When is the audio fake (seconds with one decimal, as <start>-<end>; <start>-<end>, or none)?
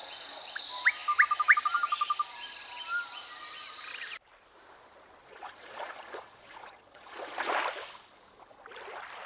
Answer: 5.2-7.5